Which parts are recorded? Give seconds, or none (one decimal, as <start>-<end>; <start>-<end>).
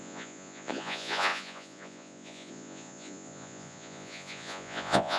none